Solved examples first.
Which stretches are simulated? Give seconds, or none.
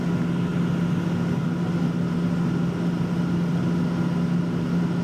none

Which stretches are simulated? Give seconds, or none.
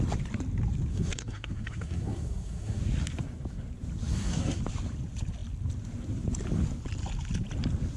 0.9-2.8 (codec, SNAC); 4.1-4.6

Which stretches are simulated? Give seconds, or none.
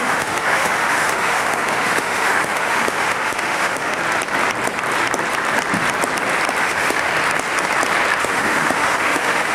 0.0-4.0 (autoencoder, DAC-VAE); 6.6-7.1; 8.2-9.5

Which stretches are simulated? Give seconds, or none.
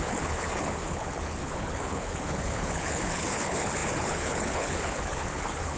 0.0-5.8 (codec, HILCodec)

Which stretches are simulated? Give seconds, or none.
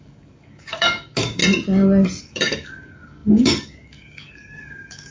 0.0-1.4 (codec, DAC); 2.2-5.1